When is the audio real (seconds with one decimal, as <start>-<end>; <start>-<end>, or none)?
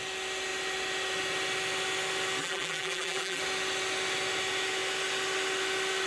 0.0-2.4; 3.4-6.1